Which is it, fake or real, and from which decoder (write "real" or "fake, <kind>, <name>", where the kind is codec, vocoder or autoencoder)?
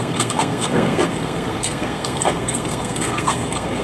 fake, codec, SNAC